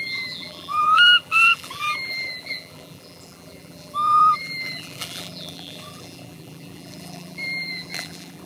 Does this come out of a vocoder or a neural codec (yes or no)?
yes